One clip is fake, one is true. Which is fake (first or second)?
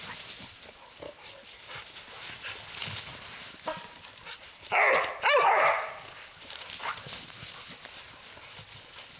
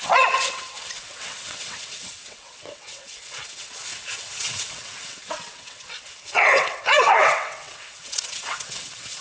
second